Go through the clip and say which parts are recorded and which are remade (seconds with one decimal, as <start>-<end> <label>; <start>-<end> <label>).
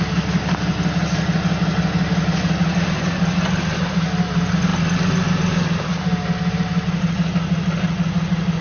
0.0-8.6 recorded